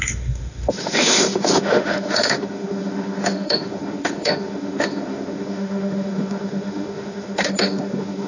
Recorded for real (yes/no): no